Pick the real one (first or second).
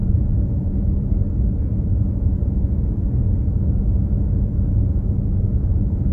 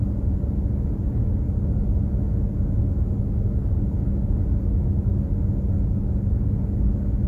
second